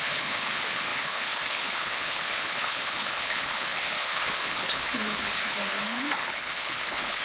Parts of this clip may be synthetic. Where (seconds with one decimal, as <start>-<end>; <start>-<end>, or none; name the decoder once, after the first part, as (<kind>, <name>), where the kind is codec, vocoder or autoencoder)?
0.0-7.2 (codec, HILCodec)